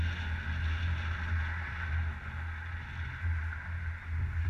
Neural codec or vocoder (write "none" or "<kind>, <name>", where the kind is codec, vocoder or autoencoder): none